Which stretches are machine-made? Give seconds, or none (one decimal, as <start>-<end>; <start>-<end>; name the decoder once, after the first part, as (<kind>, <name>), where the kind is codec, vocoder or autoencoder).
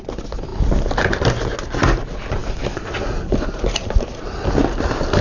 none